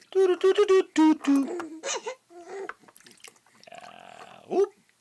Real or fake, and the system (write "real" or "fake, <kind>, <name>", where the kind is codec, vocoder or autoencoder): real